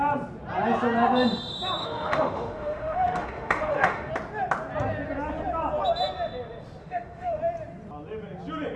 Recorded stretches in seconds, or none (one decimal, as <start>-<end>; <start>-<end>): 0.0-1.8; 4.1-6.8; 7.4-8.8